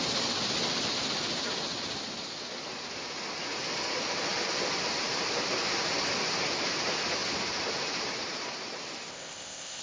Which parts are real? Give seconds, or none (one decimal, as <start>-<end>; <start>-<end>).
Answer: 0.0-9.1